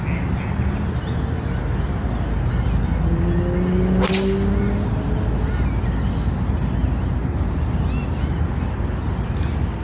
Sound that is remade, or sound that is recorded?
recorded